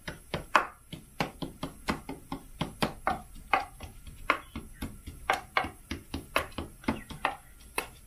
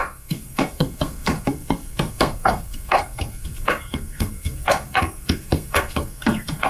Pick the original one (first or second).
first